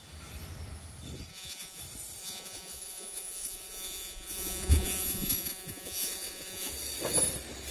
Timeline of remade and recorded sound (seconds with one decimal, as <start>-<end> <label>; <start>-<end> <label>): 0.0-1.3 recorded; 1.3-1.8 remade; 1.8-2.2 recorded; 2.2-6.7 remade; 6.7-7.7 recorded